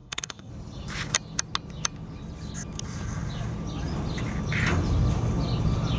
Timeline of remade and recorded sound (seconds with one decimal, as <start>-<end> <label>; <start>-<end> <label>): 0.0-0.5 remade; 0.5-6.0 recorded

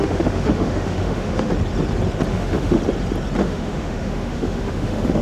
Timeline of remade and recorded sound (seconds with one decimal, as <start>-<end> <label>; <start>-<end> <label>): 0.0-1.5 remade; 1.5-2.3 recorded; 2.3-2.8 remade; 2.8-3.4 recorded; 3.4-5.2 remade

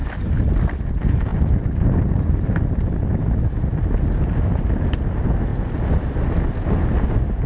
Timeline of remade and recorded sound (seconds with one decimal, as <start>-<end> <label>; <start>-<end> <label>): 0.0-0.9 remade; 0.9-1.3 recorded; 1.3-3.1 remade; 3.1-5.5 recorded; 5.5-6.2 remade; 6.2-7.5 recorded

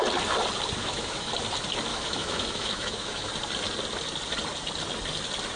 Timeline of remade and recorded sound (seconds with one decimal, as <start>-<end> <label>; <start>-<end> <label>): 0.0-0.8 recorded; 0.8-1.3 remade; 1.3-1.9 recorded; 1.9-3.3 remade; 3.3-5.6 recorded

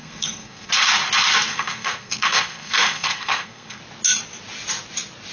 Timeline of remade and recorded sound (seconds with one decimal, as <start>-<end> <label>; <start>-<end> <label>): 0.0-0.7 remade; 0.7-1.5 recorded; 1.5-3.8 remade; 3.8-5.3 recorded

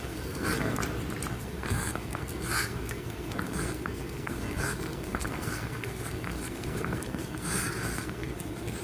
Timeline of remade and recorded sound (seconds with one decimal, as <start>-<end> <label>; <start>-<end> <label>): 0.0-0.8 remade; 0.8-1.3 recorded; 1.3-8.8 remade

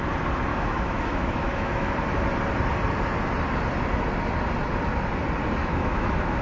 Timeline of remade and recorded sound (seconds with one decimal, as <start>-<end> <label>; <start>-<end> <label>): 0.0-0.5 recorded; 0.5-1.9 remade; 1.9-5.6 recorded; 5.6-6.4 remade

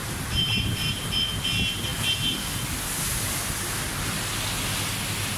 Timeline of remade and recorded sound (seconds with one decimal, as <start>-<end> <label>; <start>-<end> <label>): 0.0-1.1 remade; 1.1-5.4 recorded